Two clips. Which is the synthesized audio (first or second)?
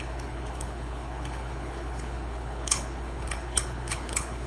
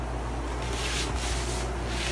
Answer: first